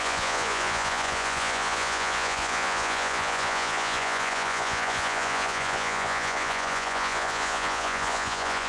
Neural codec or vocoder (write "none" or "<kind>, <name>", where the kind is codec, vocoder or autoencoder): vocoder, Vocos